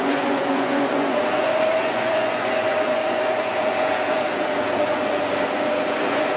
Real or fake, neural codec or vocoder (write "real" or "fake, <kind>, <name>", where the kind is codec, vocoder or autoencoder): fake, vocoder, Vocos